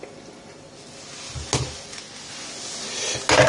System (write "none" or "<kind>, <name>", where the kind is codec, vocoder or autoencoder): none